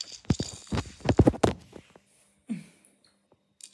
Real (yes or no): yes